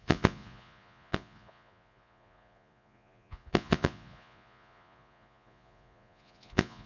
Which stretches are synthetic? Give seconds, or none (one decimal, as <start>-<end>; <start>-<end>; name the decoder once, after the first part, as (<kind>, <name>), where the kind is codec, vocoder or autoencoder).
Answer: 0.0-6.9 (vocoder, Vocos)

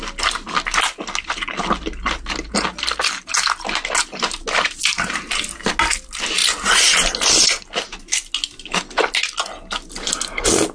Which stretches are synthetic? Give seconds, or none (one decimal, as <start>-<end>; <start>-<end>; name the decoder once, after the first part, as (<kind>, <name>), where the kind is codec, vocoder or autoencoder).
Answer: none

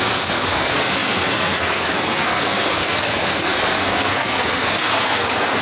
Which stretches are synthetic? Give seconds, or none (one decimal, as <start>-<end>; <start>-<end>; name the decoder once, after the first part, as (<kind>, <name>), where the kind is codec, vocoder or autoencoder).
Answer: 0.0-5.6 (codec, SNAC)

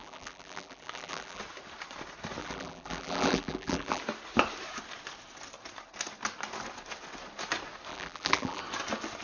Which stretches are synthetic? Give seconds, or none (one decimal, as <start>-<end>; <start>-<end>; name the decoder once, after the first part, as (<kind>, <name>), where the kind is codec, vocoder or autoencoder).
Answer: 0.0-1.4 (vocoder, BigVGAN v2); 2.4-4.0; 7.9-8.6

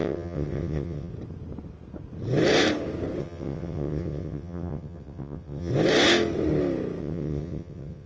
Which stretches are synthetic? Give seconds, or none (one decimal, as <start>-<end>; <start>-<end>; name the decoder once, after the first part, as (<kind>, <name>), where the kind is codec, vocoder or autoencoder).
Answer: 0.0-1.1 (vocoder, WaveNeXt); 3.2-5.7; 7.0-8.1